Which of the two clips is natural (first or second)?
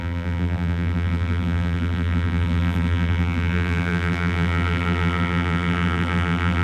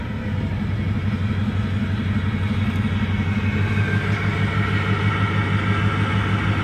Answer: second